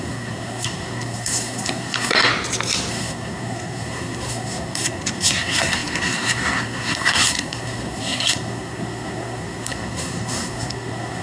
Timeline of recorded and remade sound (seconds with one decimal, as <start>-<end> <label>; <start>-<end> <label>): 0.0-2.3 remade; 2.3-2.9 recorded; 2.9-11.2 remade